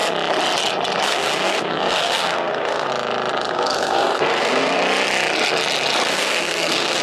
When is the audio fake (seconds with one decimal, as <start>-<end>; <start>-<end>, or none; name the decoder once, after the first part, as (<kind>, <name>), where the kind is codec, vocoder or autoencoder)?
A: 1.0-2.9 (codec, SNAC); 3.5-4.8; 6.1-7.0